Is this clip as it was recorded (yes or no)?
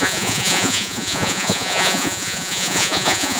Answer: no